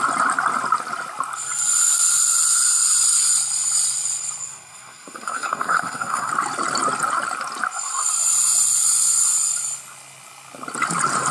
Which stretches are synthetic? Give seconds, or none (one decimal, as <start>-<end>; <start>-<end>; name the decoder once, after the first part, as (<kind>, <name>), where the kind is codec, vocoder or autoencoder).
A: 4.4-6.3 (codec, SNAC)